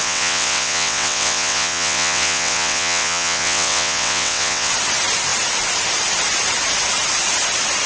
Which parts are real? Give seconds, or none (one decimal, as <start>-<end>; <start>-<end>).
4.7-7.9